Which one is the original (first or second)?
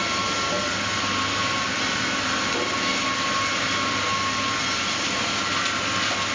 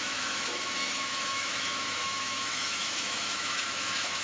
first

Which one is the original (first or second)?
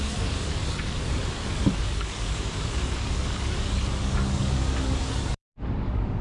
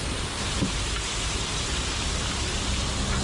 second